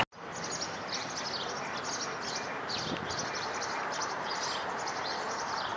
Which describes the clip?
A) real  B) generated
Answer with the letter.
A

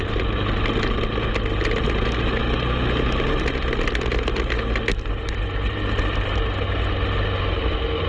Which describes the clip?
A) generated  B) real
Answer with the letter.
B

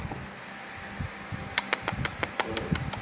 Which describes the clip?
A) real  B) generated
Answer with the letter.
A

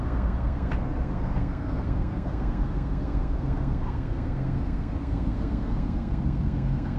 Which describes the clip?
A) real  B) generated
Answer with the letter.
B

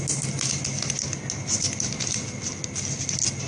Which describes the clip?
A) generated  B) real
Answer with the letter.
B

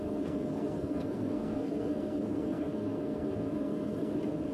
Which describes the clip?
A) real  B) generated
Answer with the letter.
B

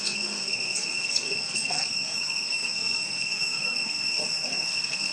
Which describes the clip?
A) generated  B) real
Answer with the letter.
A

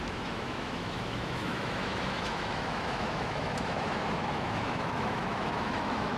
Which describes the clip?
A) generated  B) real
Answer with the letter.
A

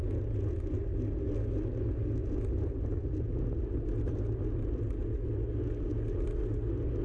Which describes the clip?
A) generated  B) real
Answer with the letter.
B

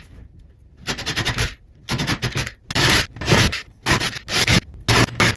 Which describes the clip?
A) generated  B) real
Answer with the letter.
A